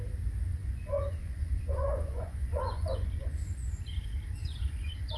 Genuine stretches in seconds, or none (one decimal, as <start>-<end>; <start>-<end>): 0.0-0.6; 3.7-4.4